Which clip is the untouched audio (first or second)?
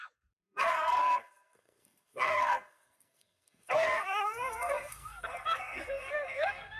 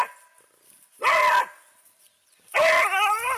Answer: second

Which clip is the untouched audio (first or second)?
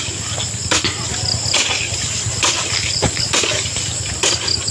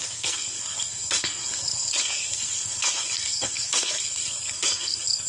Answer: first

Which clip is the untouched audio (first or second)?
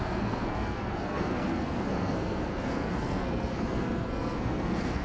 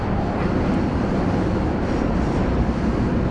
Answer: second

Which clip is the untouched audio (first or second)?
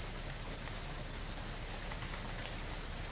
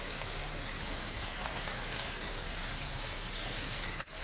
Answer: first